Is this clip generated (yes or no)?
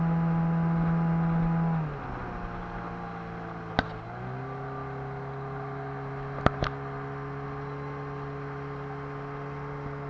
no